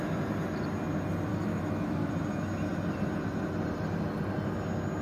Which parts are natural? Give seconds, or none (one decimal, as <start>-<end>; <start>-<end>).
0.0-1.3; 2.1-5.0